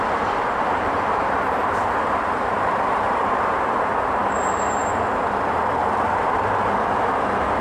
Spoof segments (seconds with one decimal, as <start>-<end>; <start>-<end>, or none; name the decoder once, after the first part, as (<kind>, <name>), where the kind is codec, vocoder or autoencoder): 0.0-7.6 (vocoder, BigVGAN v2)